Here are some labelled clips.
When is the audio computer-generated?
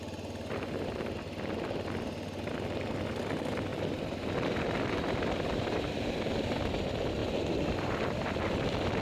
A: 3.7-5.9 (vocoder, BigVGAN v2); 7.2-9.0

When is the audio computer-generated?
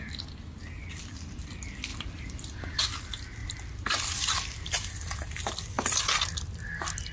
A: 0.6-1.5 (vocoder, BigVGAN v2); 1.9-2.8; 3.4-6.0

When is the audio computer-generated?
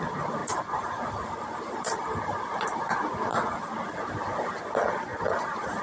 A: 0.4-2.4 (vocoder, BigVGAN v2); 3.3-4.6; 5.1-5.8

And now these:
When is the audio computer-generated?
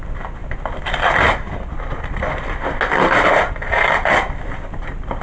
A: none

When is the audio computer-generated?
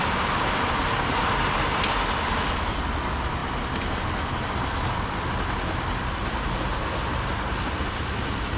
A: none